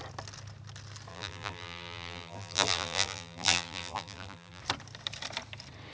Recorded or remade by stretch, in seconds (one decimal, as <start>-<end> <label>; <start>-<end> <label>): 0.0-1.1 recorded; 1.1-4.6 remade; 4.6-5.9 recorded